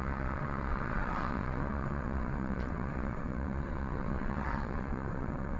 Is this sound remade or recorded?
remade